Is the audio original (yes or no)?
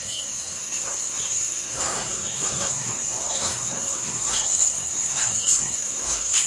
no